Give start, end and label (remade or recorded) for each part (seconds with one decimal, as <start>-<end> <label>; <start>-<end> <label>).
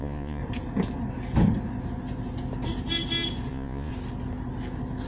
0.0-0.4 remade; 0.4-3.5 recorded; 3.5-3.9 remade; 3.9-5.1 recorded